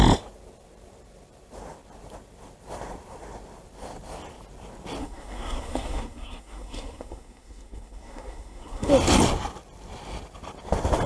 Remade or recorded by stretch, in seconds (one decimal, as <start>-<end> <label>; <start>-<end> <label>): 0.0-5.0 recorded; 5.0-8.9 remade; 8.9-11.1 recorded